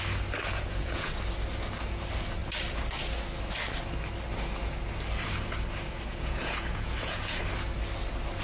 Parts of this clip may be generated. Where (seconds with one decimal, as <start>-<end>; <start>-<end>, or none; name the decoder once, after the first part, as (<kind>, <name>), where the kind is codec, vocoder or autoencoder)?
0.5-1.1 (vocoder, Vocos); 6.1-7.4